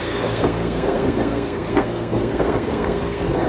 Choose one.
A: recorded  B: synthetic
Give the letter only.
B